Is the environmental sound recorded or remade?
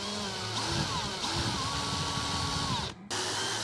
recorded